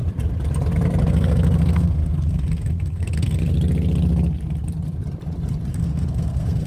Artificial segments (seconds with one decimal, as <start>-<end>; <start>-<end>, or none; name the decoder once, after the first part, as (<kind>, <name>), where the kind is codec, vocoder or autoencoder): 1.1-3.5 (codec, SNAC); 5.7-6.7

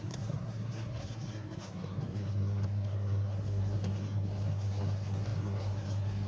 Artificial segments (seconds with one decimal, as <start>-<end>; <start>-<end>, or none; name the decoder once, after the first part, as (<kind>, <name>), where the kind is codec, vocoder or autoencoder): 0.0-6.3 (codec, SNAC)

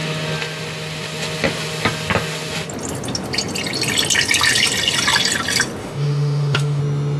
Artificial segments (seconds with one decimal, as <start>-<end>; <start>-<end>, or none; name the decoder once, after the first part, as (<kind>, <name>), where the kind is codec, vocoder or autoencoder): 5.8-6.8 (autoencoder, DAC-VAE)

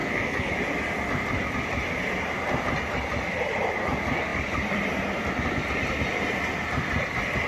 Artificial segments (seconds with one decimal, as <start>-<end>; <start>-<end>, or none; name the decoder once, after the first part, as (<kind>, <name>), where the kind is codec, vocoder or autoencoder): 0.0-0.5 (codec, SNAC)

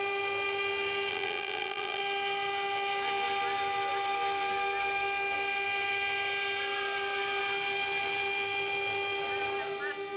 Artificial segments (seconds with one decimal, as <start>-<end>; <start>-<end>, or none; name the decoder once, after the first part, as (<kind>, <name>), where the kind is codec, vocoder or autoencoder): 1.1-2.0 (vocoder, BigVGAN v2)